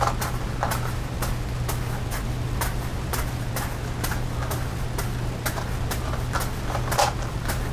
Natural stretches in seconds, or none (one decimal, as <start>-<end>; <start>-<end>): 0.0-7.7